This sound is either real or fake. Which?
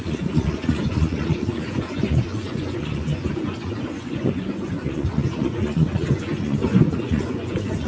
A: fake